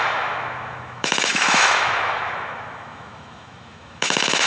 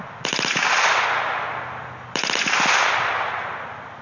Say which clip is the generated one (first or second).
first